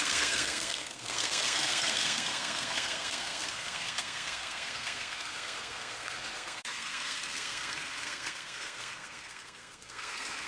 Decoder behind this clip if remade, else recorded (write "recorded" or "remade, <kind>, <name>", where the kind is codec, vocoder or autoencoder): remade, codec, SNAC